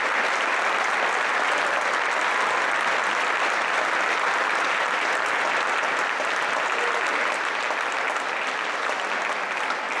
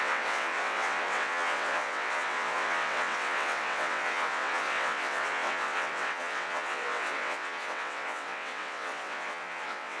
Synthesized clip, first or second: second